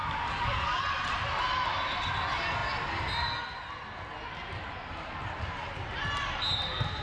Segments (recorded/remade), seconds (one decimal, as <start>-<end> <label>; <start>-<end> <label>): 0.0-0.8 remade; 0.8-7.0 recorded